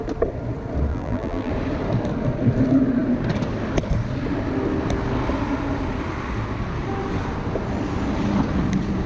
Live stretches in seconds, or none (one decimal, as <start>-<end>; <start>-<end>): 0.0-0.9; 1.5-9.1